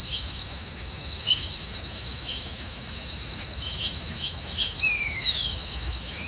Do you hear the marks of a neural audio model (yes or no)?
yes